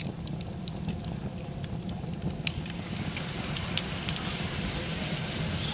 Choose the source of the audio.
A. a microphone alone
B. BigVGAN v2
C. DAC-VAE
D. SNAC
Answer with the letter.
B